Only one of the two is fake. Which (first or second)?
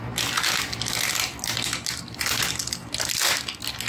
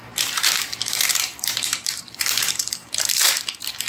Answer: second